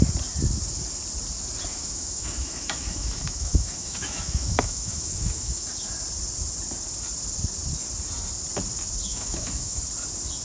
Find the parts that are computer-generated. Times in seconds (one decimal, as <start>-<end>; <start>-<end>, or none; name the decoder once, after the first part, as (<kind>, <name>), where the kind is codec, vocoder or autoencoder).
1.7-5.7 (autoencoder, DAC-VAE); 9.1-9.8